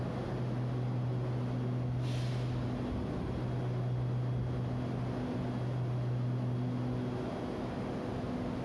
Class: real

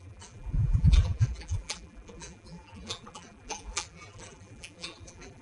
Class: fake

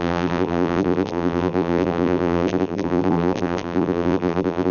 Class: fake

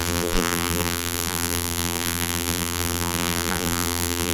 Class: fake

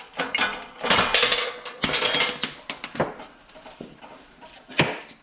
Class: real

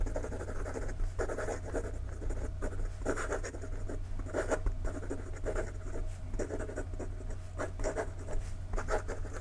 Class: real